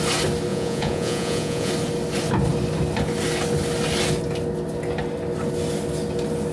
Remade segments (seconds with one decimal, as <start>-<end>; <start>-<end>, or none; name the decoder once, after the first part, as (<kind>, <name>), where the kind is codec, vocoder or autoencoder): 0.5-1.7 (vocoder, Vocos)